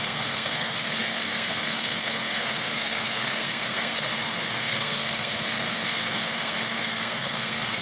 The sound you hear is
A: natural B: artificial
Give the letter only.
B